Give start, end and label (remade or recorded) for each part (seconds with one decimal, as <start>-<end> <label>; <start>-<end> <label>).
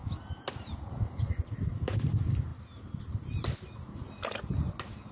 0.0-5.1 recorded